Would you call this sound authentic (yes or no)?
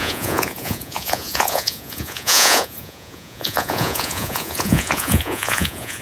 no